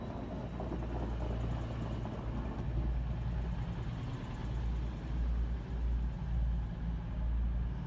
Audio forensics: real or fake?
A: real